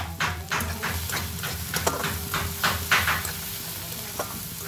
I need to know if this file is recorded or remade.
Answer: recorded